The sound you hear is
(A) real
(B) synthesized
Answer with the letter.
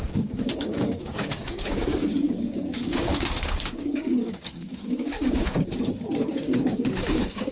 B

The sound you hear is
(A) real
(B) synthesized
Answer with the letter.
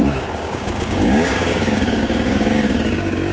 B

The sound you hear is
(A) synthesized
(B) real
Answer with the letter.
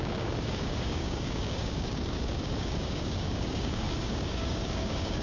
A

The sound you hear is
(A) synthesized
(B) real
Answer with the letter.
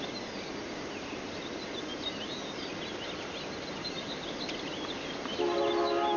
B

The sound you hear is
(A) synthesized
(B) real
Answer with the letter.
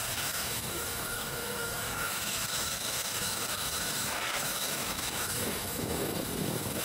A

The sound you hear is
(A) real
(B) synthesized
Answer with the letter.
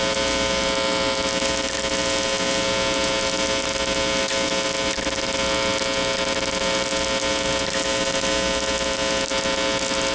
A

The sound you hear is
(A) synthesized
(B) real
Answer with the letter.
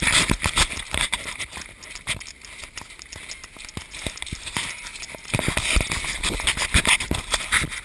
B